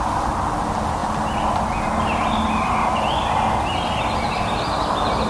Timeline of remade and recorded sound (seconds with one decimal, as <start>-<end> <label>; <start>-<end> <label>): 0.0-5.3 recorded